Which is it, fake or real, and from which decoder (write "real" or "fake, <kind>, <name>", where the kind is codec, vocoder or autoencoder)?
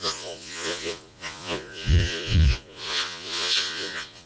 fake, vocoder, Vocos